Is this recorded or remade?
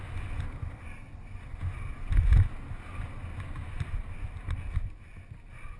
recorded